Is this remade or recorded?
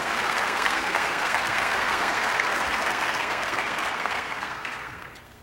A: remade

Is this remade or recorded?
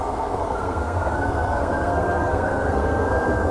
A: remade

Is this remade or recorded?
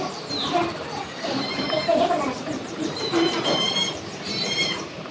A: remade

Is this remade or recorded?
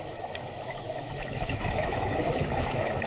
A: remade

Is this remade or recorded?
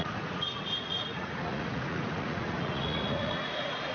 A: remade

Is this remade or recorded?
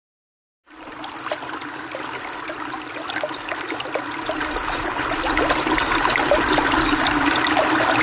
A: recorded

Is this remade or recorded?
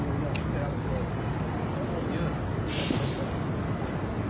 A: recorded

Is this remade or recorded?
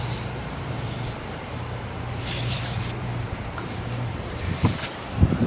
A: remade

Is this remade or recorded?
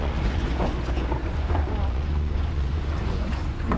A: remade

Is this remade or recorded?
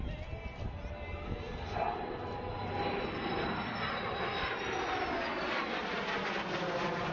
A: recorded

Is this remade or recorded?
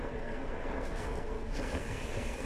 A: remade